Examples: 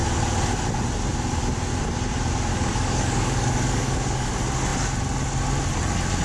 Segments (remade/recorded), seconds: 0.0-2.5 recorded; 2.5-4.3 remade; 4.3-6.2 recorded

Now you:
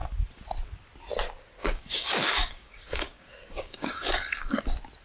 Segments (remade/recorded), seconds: 0.0-1.6 recorded; 1.6-4.6 remade; 4.6-5.0 recorded

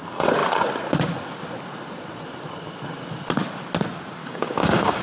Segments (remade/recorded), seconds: 0.0-4.2 recorded; 4.2-5.0 remade

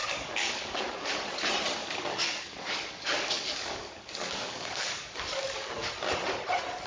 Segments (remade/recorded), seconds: 0.0-1.1 remade; 1.1-1.8 recorded; 1.8-5.9 remade; 5.9-6.9 recorded

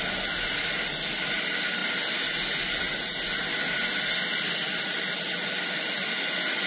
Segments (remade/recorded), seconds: 0.0-6.7 recorded

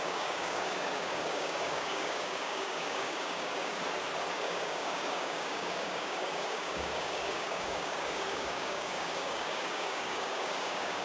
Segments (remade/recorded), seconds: 0.0-3.8 remade; 3.8-4.3 recorded; 4.3-11.0 remade

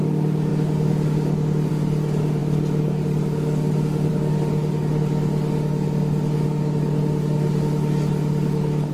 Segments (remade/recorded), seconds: 0.0-8.9 remade

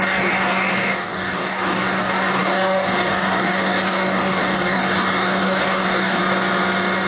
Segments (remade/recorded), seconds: 0.0-6.2 remade; 6.2-7.1 recorded